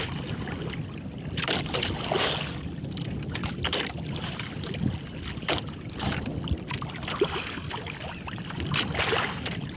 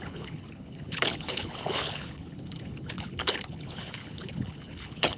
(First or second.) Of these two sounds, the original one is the first